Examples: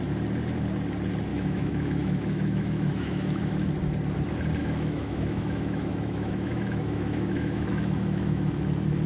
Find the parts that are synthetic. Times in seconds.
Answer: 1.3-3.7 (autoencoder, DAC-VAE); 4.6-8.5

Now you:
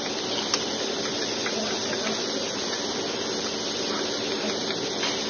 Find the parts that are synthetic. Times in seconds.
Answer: none

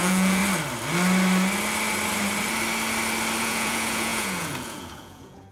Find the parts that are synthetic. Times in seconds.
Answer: 0.0-0.4 (vocoder, Vocos); 3.4-5.5